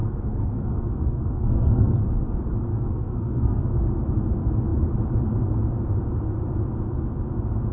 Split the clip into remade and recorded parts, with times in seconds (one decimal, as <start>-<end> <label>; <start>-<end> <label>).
0.0-1.9 remade; 1.9-2.7 recorded; 2.7-3.6 remade; 3.6-7.7 recorded